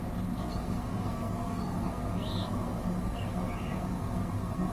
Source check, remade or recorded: remade